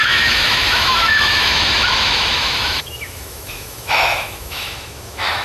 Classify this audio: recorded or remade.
remade